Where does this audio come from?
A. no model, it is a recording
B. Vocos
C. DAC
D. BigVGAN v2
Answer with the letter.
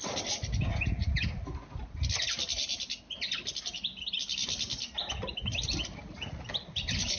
A